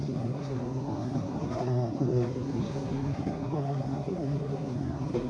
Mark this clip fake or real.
fake